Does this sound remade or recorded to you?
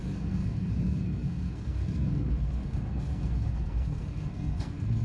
remade